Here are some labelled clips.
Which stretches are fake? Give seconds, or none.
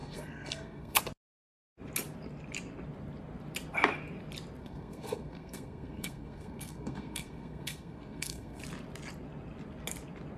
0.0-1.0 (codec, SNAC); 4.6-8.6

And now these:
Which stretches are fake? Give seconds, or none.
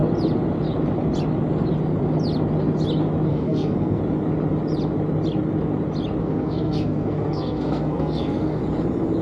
3.3-4.0 (codec, SNAC); 6.2-8.6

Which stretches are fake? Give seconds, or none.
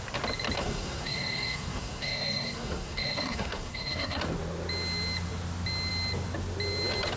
0.6-4.2 (codec, SNAC)